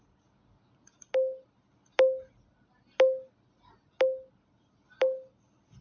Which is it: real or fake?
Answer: real